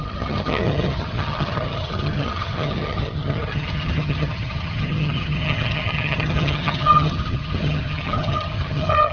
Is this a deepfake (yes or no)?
yes